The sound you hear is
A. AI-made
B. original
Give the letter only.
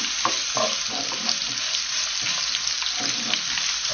B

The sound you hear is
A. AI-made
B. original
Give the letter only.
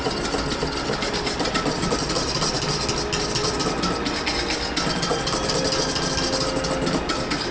B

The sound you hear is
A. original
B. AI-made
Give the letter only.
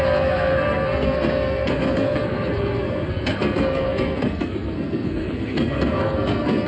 B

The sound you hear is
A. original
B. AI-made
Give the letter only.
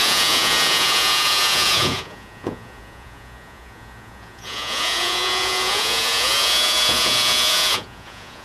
B